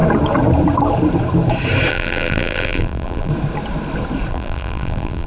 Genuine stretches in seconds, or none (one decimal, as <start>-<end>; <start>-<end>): 0.0-1.9; 3.3-4.3